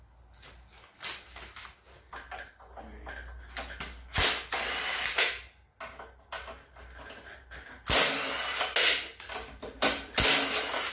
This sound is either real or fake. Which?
real